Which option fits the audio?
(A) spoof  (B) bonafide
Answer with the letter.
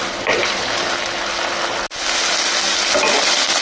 B